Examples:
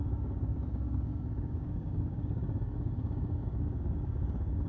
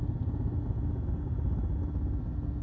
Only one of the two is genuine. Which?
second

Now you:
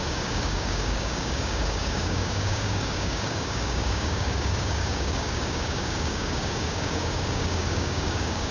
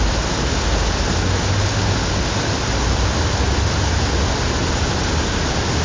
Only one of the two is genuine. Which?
second